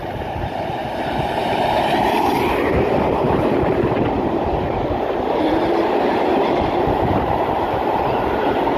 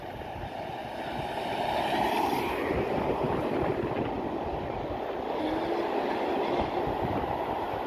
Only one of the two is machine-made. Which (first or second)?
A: first